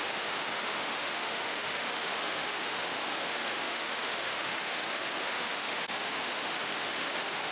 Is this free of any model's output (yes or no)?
no